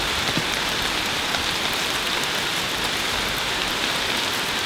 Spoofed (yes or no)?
no